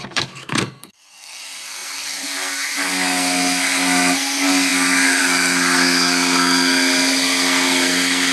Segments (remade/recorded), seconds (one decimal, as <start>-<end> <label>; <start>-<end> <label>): 0.0-8.3 remade